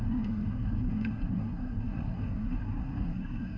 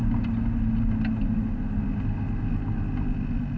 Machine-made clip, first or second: first